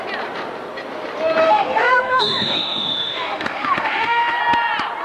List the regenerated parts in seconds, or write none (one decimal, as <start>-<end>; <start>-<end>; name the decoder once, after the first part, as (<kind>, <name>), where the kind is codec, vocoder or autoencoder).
1.4-4.4 (autoencoder, DAC-VAE)